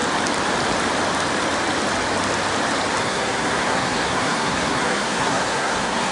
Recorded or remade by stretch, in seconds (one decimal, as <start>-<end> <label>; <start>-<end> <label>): 0.0-3.0 recorded; 3.0-6.1 remade